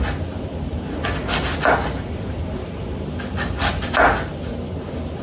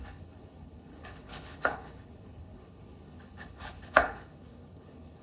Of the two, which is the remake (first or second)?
second